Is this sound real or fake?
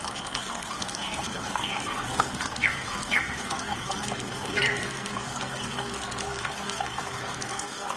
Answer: fake